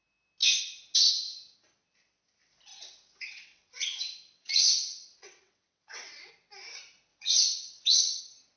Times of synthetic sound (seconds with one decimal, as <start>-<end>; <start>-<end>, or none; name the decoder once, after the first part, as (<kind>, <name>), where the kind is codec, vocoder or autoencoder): 2.7-6.3 (vocoder, WaveNeXt); 7.1-8.2

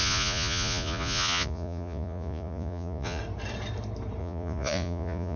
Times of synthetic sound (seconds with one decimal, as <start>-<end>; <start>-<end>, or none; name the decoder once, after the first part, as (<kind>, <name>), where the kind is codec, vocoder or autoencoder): 0.0-3.2 (vocoder, Vocos); 4.2-5.4

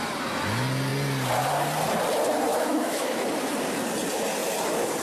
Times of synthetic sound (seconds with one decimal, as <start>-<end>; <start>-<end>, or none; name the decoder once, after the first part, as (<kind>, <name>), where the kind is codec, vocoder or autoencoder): 2.5-3.3 (autoencoder, DAC-VAE)

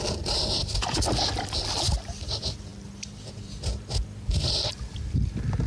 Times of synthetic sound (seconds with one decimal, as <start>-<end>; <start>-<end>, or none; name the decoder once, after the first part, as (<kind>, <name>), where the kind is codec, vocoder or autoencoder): none

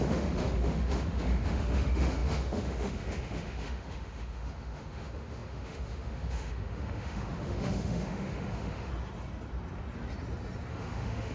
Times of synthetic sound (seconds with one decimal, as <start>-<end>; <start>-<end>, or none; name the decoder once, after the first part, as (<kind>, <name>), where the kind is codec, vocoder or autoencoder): 0.0-8.9 (autoencoder, DAC-VAE); 10.7-11.3

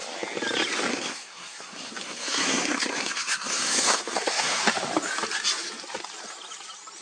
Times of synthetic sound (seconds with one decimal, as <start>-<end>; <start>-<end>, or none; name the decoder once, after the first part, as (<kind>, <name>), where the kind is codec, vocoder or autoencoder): 0.9-4.6 (codec, SNAC)